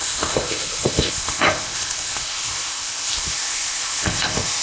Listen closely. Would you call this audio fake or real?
fake